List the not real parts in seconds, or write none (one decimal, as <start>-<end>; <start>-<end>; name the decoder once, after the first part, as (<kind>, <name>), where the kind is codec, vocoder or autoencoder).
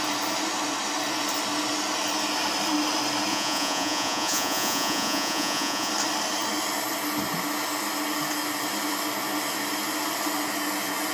3.3-5.9 (vocoder, Vocos)